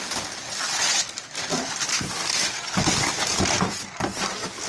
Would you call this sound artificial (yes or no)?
no